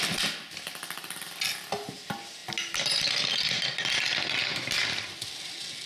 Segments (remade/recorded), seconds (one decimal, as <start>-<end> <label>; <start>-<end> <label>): 0.0-5.9 recorded